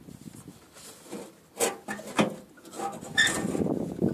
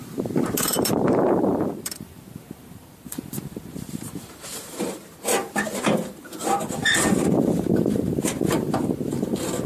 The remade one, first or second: second